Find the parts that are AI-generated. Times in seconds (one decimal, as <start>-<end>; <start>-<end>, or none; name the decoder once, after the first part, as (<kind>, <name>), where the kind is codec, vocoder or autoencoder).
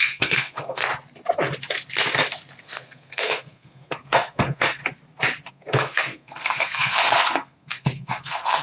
0.0-0.9 (codec, SNAC); 2.6-4.8; 5.5-8.6